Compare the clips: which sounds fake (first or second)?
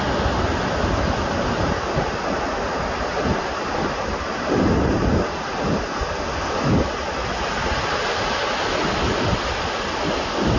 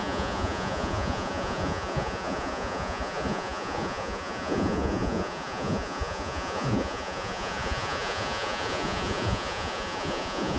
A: second